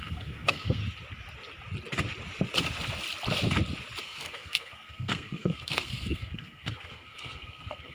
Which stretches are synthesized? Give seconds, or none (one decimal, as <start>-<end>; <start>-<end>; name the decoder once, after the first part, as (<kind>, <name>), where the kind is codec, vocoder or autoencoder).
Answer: 0.0-0.8 (codec, SNAC); 4.0-7.9